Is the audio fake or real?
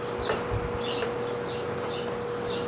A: real